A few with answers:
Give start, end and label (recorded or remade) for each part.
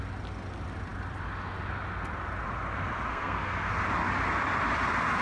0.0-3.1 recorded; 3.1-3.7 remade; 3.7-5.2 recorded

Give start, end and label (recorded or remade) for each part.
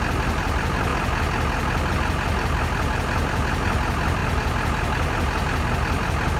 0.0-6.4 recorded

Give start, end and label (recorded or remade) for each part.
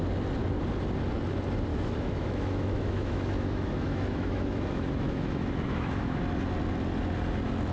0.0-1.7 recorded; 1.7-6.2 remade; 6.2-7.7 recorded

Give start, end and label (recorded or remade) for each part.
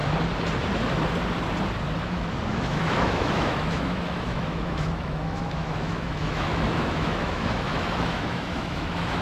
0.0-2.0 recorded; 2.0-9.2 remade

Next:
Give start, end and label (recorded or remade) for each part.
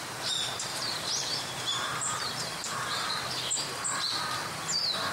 0.0-0.7 recorded; 0.7-3.1 remade; 3.1-5.1 recorded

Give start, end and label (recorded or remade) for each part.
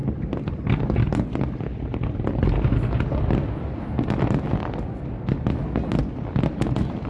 0.0-7.1 recorded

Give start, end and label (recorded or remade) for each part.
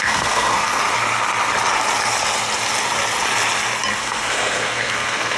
0.0-0.8 remade; 0.8-4.0 recorded; 4.0-5.4 remade